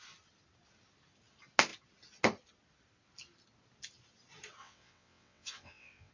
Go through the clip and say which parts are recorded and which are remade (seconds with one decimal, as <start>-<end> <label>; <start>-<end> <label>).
0.0-4.6 recorded; 4.6-6.1 remade